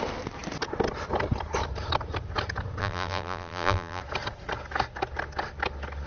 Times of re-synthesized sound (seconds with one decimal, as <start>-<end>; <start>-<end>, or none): 2.8-4.0